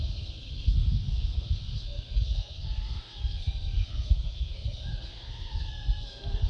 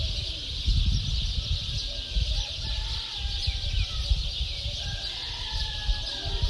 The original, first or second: second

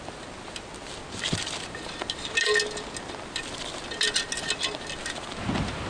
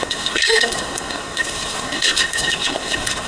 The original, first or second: first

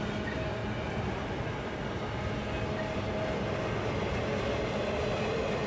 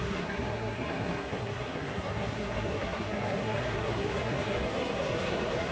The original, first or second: first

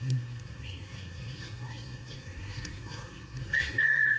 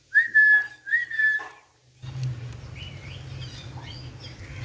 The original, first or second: second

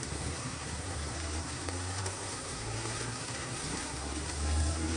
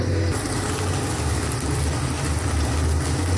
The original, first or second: second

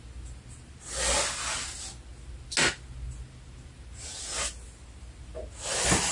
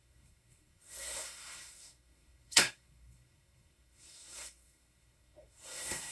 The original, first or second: first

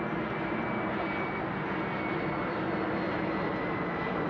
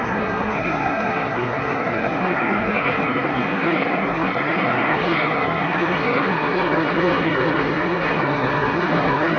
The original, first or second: first